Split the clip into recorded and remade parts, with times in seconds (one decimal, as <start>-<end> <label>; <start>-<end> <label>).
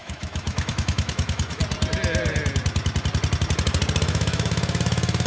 0.0-1.6 remade; 1.6-4.0 recorded; 4.0-5.3 remade